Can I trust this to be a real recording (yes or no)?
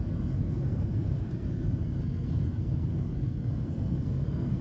no